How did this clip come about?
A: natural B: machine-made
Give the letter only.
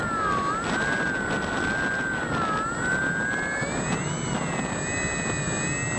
A